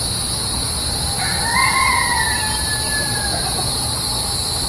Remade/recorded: recorded